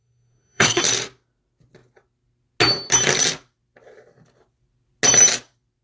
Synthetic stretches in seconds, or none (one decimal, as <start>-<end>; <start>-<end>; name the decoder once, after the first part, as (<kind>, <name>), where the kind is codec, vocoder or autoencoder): 0.0-0.8 (codec, SNAC)